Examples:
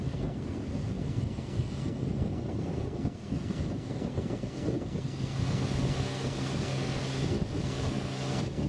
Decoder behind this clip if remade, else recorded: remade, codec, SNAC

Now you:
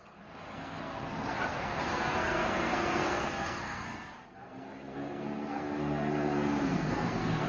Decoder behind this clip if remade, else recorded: remade, codec, SNAC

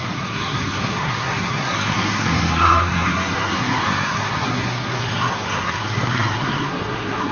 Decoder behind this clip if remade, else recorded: remade, codec, SNAC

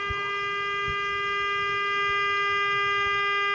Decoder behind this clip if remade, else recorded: recorded